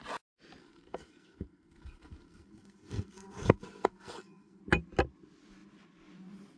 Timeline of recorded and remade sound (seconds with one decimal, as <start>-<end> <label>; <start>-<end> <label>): 0.0-0.6 recorded; 0.6-4.6 remade; 4.6-6.6 recorded